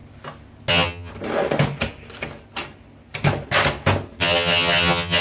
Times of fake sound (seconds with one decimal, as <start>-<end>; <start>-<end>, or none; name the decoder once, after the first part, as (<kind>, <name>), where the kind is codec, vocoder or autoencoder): 0.7-1.1 (vocoder, HiFi-GAN); 4.2-5.2